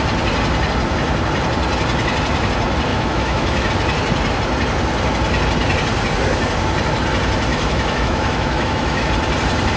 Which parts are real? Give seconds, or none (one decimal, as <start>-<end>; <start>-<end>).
0.0-2.9; 3.7-7.5; 9.1-9.8